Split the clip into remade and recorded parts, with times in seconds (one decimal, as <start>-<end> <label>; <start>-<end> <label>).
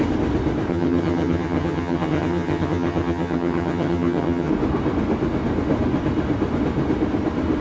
0.0-0.7 recorded; 0.7-4.5 remade; 4.5-7.6 recorded